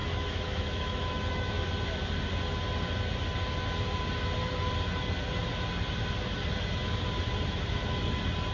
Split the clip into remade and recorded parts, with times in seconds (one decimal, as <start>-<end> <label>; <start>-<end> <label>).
0.0-1.7 remade; 1.7-8.5 recorded